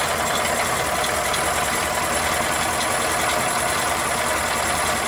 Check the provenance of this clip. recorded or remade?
recorded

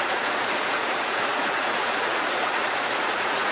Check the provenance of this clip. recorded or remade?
remade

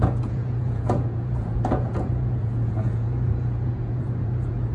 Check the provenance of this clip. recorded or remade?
remade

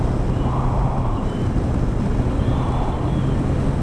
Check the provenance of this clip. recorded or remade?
recorded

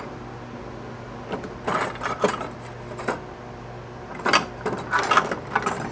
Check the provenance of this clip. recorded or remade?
recorded